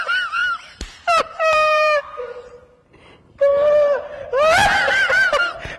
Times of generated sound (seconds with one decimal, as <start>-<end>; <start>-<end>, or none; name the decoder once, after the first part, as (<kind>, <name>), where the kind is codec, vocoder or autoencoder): 0.4-2.0 (vocoder, BigVGAN v2); 3.5-5.8